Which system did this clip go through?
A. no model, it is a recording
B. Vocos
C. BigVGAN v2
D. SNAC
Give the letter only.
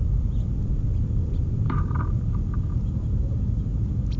A